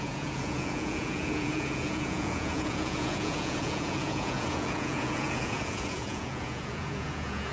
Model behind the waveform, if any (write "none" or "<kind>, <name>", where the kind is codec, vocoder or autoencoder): vocoder, Vocos